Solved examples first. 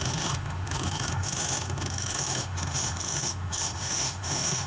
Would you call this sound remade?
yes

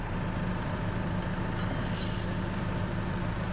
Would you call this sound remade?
yes